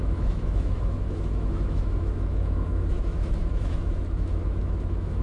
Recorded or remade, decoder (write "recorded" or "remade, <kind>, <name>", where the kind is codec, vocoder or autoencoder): remade, autoencoder, DAC-VAE